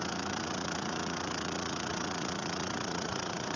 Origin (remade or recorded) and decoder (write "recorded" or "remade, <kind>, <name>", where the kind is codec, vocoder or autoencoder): remade, vocoder, Vocos